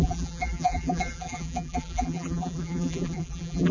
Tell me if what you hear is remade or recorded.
remade